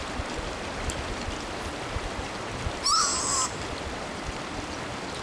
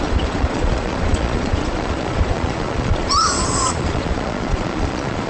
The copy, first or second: second